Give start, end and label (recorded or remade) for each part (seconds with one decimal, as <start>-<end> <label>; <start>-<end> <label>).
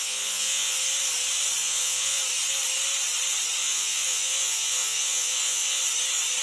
0.0-0.8 remade; 0.8-1.6 recorded; 1.6-2.2 remade; 2.2-3.6 recorded; 3.6-5.8 remade; 5.8-6.4 recorded